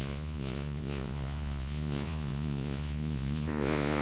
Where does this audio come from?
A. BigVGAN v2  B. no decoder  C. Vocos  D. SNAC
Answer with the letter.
C